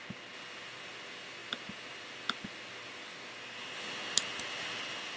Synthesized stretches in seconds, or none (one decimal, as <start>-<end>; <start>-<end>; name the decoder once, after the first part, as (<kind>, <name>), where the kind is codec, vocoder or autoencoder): none